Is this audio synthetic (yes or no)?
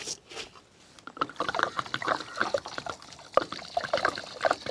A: no